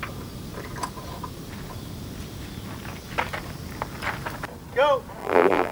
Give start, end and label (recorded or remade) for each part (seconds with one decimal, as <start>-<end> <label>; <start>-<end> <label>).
0.0-5.2 recorded; 5.2-5.7 remade